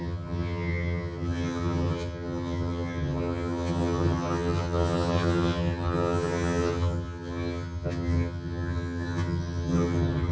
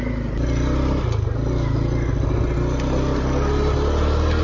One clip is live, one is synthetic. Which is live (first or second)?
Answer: second